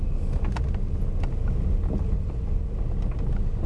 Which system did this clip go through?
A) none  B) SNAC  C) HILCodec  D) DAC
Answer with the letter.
A